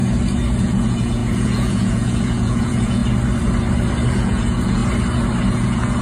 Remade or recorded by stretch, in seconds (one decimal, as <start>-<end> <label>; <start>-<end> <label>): 0.0-0.6 recorded; 0.6-3.0 remade; 3.0-4.1 recorded; 4.1-4.8 remade; 4.8-5.5 recorded; 5.5-6.0 remade